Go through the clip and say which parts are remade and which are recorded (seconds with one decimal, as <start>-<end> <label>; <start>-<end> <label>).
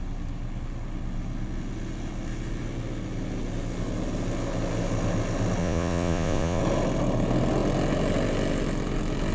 0.0-5.6 recorded; 5.6-6.6 remade; 6.6-9.3 recorded